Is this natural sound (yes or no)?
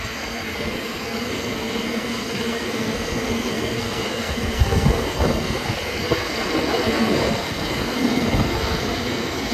no